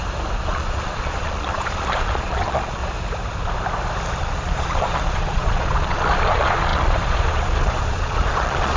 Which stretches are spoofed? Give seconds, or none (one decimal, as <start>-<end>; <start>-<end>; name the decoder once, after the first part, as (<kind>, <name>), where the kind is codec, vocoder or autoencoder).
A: 0.5-2.8 (vocoder, Vocos); 4.2-8.8